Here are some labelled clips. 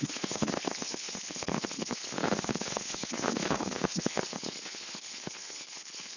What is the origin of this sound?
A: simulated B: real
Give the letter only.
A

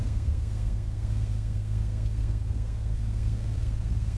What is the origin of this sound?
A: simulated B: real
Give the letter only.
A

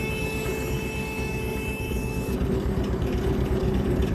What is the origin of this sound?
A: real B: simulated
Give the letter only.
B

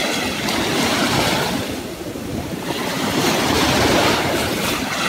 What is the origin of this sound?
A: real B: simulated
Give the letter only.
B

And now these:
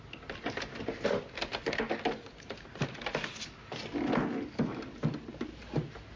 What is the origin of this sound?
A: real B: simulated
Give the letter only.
A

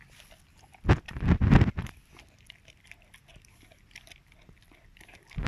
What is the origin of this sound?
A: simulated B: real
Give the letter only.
B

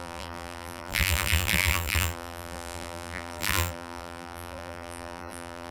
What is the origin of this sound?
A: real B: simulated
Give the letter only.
B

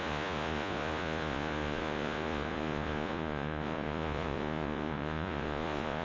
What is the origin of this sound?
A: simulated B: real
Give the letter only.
A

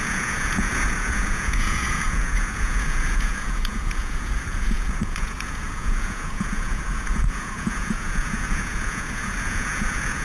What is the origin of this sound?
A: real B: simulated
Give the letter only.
B